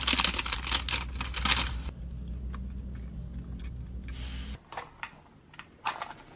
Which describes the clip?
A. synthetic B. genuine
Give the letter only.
B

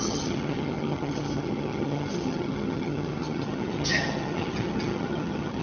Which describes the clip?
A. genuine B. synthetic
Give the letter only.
B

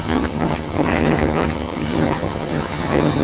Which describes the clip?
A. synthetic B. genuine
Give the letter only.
A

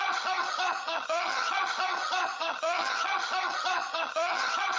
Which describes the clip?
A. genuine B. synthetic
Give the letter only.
B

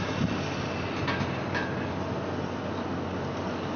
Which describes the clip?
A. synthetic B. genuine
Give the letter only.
B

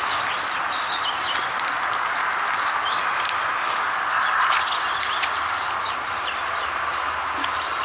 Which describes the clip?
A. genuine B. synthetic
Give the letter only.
A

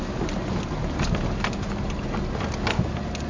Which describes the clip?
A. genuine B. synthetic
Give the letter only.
A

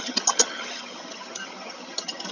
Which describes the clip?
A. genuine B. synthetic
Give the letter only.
B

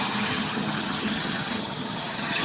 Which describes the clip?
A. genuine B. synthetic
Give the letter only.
B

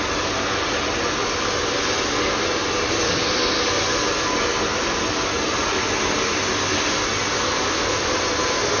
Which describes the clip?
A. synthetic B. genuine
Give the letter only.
B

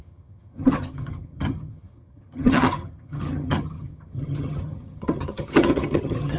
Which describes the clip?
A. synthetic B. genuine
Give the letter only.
A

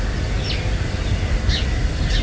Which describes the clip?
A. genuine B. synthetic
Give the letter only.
A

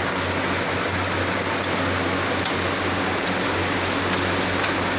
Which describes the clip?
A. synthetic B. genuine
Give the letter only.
B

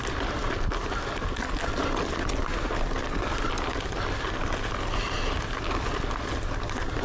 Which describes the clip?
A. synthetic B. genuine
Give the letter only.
B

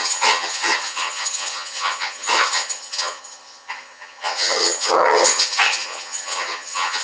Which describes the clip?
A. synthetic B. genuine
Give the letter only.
A